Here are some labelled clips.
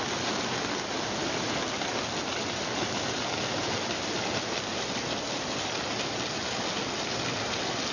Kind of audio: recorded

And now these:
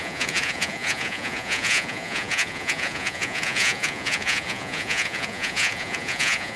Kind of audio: remade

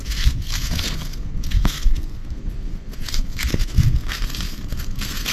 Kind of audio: remade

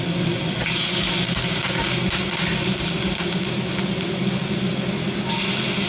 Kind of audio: recorded